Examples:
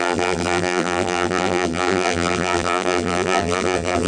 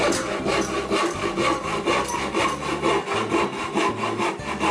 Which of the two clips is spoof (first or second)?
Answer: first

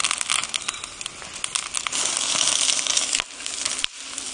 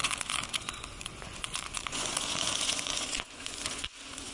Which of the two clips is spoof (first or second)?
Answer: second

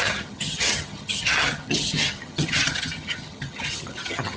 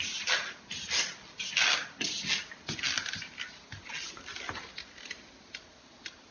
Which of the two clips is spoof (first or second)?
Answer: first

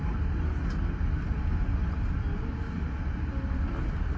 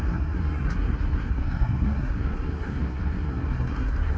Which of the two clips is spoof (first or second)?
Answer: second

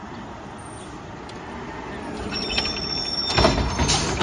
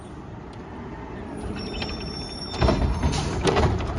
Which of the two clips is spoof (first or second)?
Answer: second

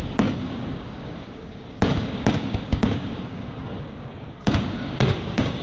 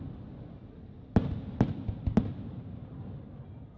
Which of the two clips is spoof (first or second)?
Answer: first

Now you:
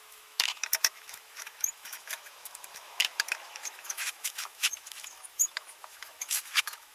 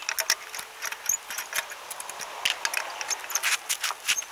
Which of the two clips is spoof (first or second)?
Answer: first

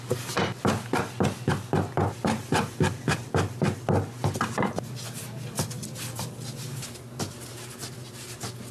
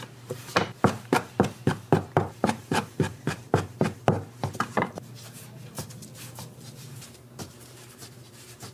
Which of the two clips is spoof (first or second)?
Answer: second